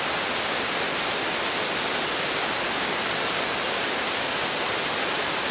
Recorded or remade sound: recorded